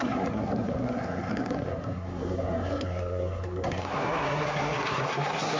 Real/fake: fake